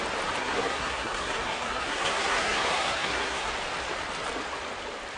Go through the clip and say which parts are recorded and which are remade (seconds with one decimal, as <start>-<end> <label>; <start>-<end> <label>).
0.0-0.4 recorded; 0.4-3.5 remade; 3.5-5.2 recorded